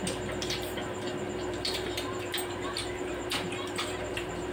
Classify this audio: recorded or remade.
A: remade